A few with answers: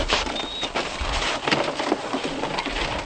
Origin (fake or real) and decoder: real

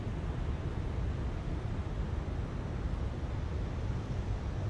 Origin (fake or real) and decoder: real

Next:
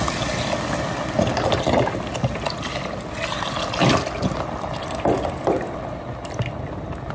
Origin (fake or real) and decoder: real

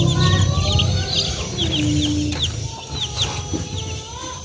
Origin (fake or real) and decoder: real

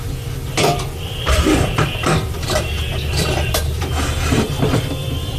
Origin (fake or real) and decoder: fake, vocoder, BigVGAN v2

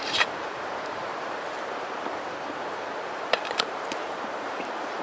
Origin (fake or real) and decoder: fake, vocoder, BigVGAN v2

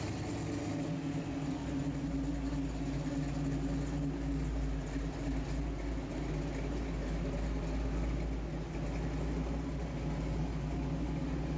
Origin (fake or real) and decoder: real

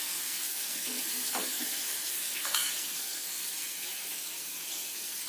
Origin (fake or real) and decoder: fake, codec, SNAC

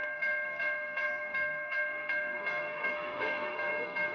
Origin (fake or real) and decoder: fake, codec, SNAC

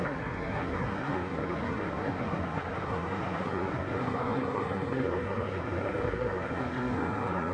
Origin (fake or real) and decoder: fake, codec, SNAC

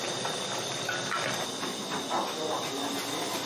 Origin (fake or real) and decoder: real